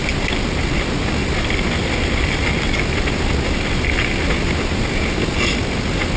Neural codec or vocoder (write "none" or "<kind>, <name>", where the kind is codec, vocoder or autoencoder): none